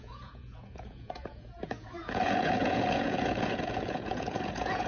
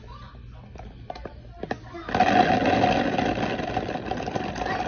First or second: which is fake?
first